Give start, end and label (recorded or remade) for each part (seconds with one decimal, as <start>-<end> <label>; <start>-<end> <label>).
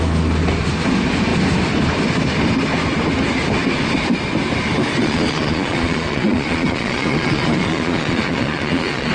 0.0-5.0 recorded; 5.0-9.1 remade